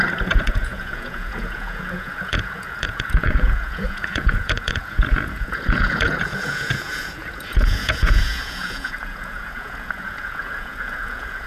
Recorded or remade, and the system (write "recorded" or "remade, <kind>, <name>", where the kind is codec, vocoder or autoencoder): remade, vocoder, Vocos